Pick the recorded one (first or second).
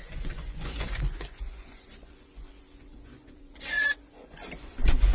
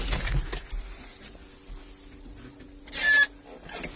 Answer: second